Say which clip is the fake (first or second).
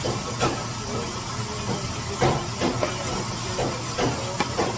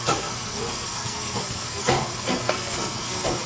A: second